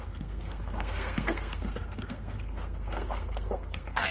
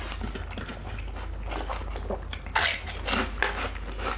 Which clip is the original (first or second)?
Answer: second